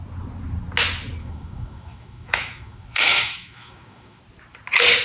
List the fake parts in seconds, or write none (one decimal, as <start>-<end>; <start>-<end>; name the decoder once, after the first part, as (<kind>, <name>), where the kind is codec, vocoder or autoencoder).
1.2-4.2 (autoencoder, DAC-VAE)